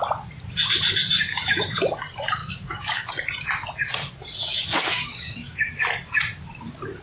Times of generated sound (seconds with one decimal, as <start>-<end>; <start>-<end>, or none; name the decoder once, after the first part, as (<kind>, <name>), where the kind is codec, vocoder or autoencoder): 1.3-1.8 (autoencoder, DAC-VAE); 2.4-3.1; 4.4-5.7